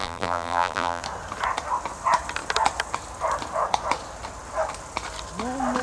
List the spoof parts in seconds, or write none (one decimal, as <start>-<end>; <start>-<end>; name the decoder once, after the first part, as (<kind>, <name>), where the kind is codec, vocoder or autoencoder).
0.0-1.0 (vocoder, BigVGAN v2)